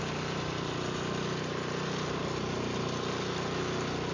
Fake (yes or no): no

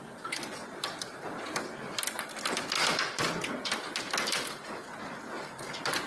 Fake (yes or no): no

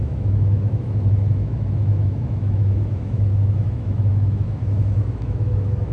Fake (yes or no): yes